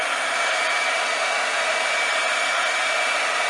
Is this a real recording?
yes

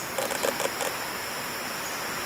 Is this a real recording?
yes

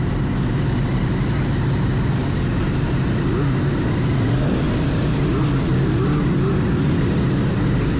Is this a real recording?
yes